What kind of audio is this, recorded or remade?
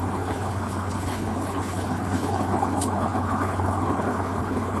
remade